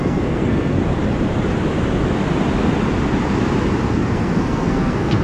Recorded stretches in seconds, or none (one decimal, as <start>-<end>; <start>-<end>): 0.8-3.9